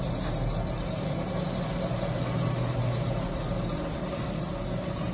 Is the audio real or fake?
real